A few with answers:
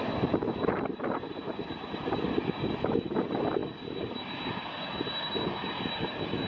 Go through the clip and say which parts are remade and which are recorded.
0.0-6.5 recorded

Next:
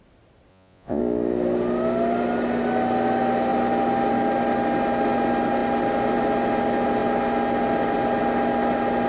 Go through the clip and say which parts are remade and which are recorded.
0.0-0.5 recorded; 0.5-1.0 remade; 1.0-9.1 recorded

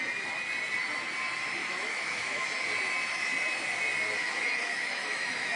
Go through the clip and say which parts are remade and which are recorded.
0.0-1.6 recorded; 1.6-2.4 remade; 2.4-4.2 recorded; 4.2-5.6 remade

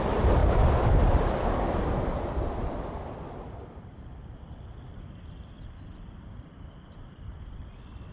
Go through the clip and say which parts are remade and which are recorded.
0.0-8.1 recorded

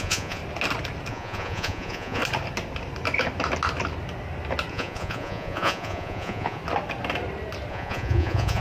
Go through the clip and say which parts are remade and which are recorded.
0.0-0.4 remade; 0.4-1.1 recorded; 1.1-2.2 remade; 2.2-4.7 recorded; 4.7-6.6 remade; 6.6-7.7 recorded; 7.7-8.6 remade

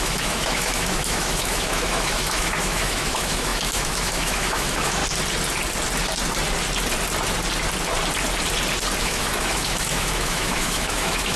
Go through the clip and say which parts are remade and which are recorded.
0.0-5.0 remade; 5.0-9.0 recorded; 9.0-11.4 remade

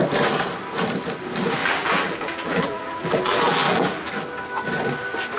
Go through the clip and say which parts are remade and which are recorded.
0.0-1.6 recorded; 1.6-4.1 remade; 4.1-5.4 recorded